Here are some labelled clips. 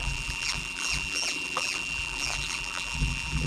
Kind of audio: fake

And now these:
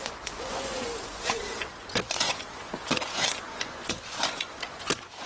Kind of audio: fake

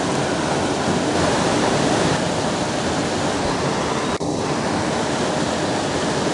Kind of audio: real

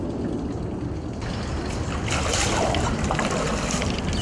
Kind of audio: real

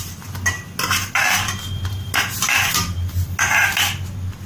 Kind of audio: real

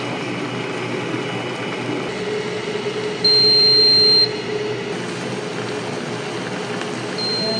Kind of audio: real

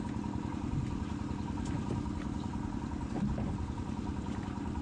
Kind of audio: real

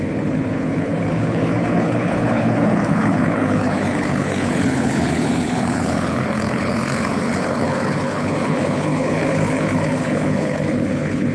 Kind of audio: fake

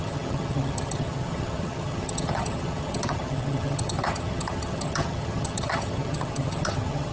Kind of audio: fake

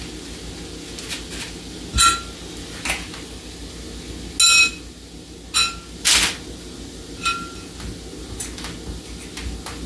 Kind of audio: real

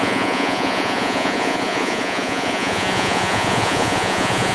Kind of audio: fake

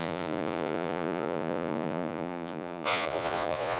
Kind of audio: fake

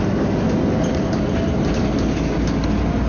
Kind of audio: real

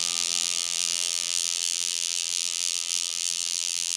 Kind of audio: fake